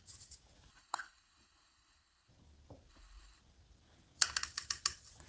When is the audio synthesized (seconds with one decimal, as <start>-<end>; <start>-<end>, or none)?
0.7-2.3; 2.9-3.4